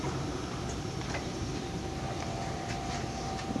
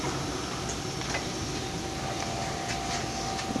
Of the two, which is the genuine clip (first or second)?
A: second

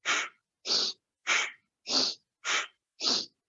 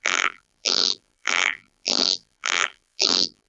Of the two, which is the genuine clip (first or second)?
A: first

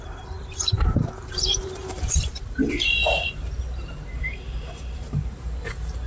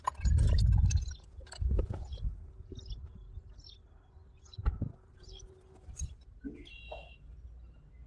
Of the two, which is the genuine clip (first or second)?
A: second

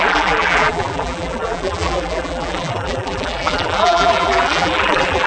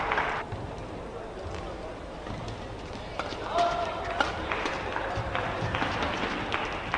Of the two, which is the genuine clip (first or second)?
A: second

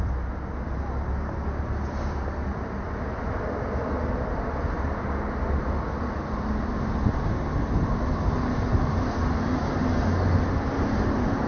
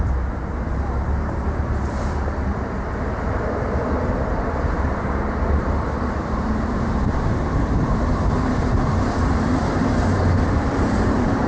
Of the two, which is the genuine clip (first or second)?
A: first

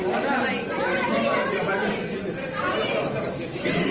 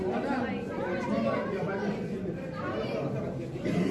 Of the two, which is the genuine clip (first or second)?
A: second